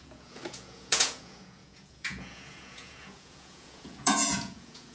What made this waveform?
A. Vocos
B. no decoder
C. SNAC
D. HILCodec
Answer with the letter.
A